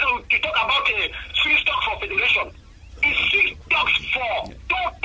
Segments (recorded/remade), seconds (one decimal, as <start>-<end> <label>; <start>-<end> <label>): 0.0-1.3 recorded; 1.3-3.3 remade; 3.3-5.0 recorded